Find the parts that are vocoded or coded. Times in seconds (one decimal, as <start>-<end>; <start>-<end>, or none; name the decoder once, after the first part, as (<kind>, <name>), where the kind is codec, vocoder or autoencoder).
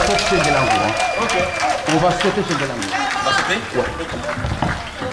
none